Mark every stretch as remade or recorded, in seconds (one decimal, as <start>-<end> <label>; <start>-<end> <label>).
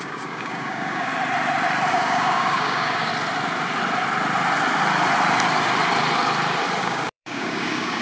0.0-1.1 remade; 1.1-1.9 recorded; 1.9-3.1 remade; 3.1-6.8 recorded; 6.8-8.0 remade